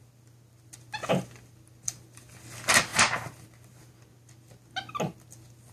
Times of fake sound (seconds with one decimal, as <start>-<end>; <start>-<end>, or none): 2.9-3.9